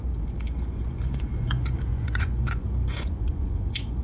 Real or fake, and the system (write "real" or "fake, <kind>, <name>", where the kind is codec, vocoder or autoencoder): fake, vocoder, Vocos